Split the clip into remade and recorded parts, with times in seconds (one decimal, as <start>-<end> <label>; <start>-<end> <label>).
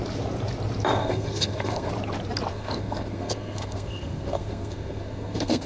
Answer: 0.0-1.0 recorded; 1.0-1.9 remade; 1.9-2.5 recorded; 2.5-5.7 remade